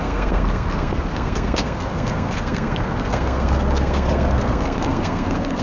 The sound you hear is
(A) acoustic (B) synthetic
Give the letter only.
B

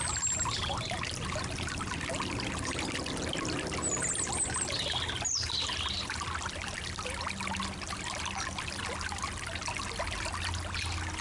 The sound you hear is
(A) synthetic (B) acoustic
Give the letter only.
B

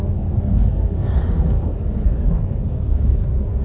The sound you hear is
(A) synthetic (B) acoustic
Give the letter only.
A